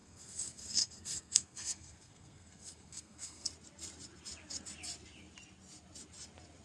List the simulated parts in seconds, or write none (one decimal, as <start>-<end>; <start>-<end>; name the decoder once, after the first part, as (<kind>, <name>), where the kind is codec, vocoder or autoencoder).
0.0-3.5 (codec, SNAC)